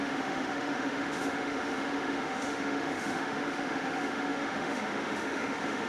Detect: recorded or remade remade